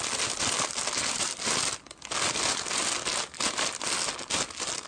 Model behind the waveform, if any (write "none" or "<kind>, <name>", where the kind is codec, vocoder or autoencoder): none